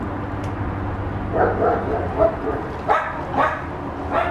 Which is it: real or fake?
real